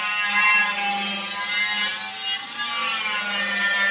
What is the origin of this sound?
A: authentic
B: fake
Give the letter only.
A